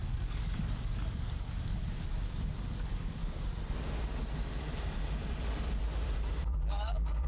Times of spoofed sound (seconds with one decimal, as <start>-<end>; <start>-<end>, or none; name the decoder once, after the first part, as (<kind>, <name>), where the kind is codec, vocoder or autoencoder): 0.0-1.8 (codec, DAC); 2.7-3.2; 6.7-7.3